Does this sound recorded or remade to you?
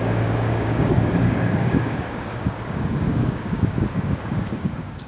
remade